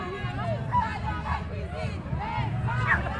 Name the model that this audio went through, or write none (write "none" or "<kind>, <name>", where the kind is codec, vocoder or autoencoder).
none